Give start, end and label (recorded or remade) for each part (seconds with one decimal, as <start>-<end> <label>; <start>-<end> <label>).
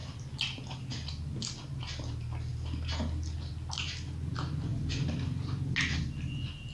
0.0-6.7 recorded